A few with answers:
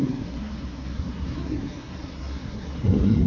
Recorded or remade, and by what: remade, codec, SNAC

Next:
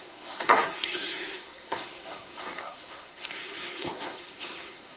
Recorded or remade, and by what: remade, codec, SNAC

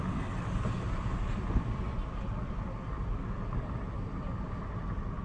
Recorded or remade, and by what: recorded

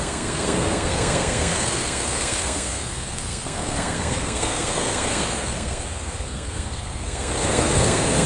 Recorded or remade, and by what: remade, codec, SNAC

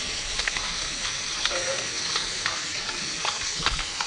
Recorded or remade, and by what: remade, codec, SNAC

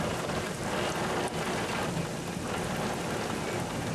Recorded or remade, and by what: recorded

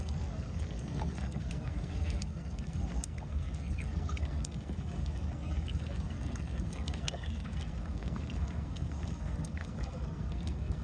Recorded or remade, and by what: remade, codec, SNAC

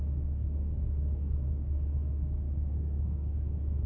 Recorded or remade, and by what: remade, codec, SNAC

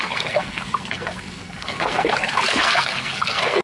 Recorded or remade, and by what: remade, codec, SNAC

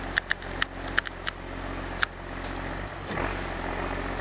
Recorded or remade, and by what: recorded